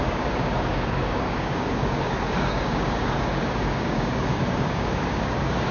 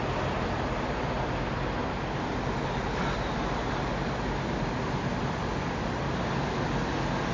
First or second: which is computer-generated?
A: first